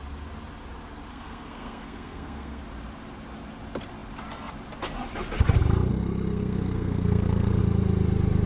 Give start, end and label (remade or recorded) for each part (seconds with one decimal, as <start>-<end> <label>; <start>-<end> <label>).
0.0-1.1 recorded; 1.1-2.6 remade; 2.6-5.9 recorded; 5.9-7.6 remade; 7.6-8.5 recorded